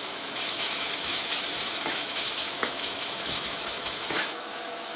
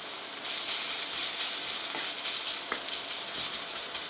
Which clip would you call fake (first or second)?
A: first